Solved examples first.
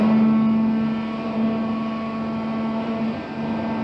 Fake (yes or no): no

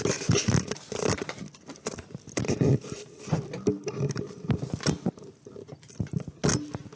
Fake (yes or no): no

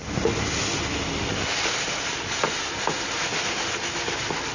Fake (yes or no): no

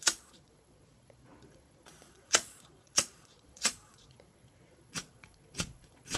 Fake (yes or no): yes